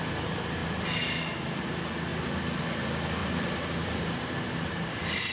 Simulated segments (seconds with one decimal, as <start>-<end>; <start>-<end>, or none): 3.2-5.3